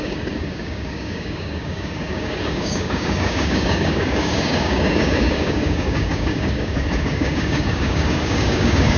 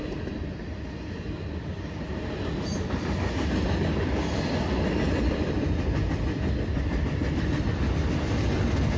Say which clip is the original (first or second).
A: second